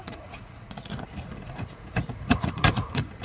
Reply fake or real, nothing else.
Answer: fake